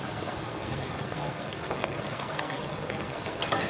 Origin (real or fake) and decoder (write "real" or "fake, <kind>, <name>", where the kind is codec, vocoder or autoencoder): fake, codec, SNAC